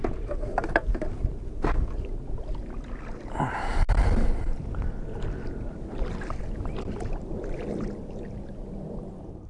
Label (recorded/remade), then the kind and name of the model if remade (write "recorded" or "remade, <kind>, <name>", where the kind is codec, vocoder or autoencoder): recorded